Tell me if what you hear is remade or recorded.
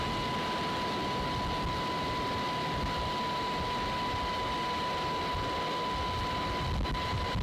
recorded